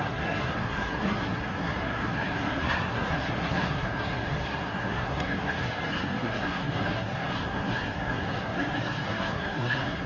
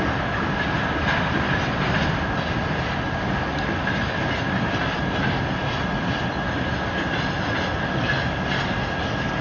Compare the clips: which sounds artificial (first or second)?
first